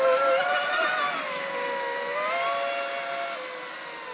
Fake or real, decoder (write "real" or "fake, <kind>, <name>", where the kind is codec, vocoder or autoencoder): real